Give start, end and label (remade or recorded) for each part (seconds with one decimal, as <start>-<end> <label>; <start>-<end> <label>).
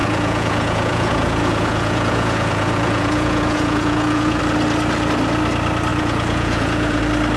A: 0.0-4.4 remade; 4.4-5.9 recorded; 5.9-7.0 remade; 7.0-7.4 recorded